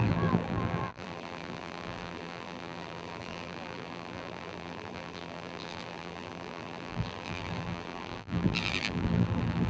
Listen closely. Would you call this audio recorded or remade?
remade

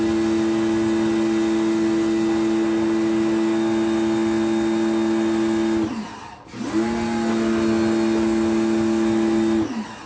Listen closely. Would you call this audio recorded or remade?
recorded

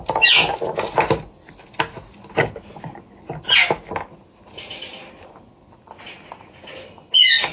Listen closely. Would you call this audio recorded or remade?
recorded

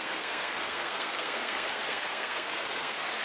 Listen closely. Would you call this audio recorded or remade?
remade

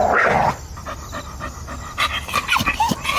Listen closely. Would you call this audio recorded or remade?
recorded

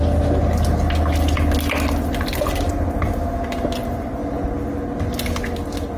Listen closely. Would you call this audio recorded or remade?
recorded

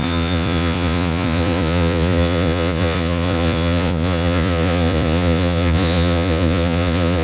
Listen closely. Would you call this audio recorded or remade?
remade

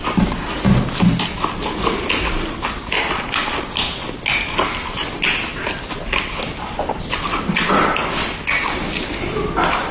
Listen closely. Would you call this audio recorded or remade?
recorded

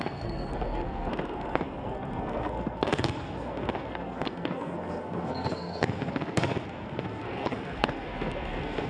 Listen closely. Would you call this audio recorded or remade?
remade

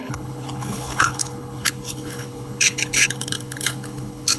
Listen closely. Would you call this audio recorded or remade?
remade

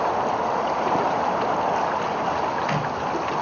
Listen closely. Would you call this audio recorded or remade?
recorded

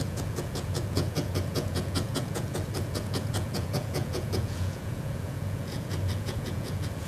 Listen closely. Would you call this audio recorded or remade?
remade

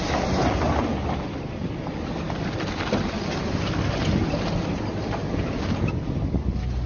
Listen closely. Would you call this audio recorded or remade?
recorded